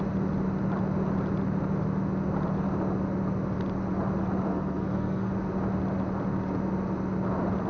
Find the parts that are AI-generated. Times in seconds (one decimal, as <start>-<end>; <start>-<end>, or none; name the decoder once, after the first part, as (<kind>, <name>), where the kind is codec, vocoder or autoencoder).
4.5-5.3 (codec, SNAC)